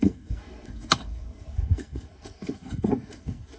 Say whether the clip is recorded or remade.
remade